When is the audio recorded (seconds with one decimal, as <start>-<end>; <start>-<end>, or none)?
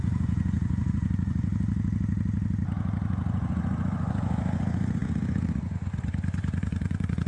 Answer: 1.5-3.1